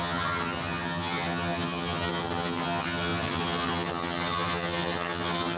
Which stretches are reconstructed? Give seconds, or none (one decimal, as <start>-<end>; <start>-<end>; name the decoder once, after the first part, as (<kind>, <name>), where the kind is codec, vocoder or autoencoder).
0.0-5.6 (vocoder, HiFi-GAN)

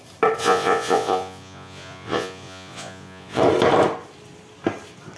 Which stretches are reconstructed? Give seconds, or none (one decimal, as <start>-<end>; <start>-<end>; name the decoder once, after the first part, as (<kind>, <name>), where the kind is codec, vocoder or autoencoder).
0.4-3.4 (vocoder, Vocos)